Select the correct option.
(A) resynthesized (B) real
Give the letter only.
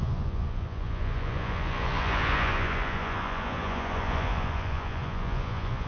A